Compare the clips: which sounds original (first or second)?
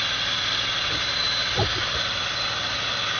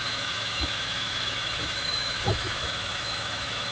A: first